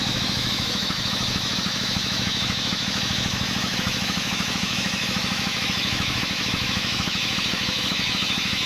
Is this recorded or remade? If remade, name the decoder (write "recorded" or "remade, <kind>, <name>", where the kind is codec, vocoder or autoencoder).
remade, autoencoder, DAC-VAE